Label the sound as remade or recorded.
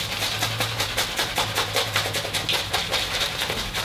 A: recorded